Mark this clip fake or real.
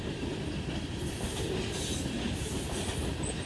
fake